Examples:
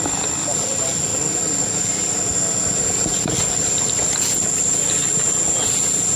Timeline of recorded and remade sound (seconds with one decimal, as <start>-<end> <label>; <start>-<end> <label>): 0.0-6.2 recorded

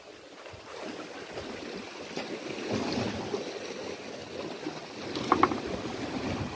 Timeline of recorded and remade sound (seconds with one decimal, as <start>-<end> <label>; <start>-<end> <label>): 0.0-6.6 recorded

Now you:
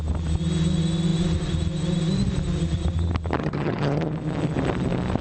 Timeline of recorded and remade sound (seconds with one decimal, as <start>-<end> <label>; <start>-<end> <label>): 0.0-3.4 recorded; 3.4-4.0 remade; 4.0-5.2 recorded